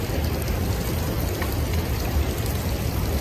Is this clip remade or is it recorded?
recorded